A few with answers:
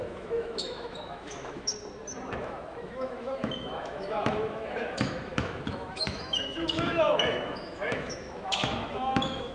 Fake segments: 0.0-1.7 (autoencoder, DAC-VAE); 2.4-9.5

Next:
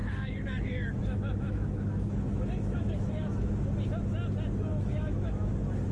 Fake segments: 0.0-3.5 (autoencoder, DAC-VAE); 4.7-5.5